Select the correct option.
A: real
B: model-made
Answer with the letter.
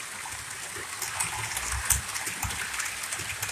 A